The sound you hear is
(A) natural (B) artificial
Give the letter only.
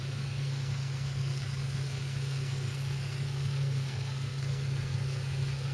B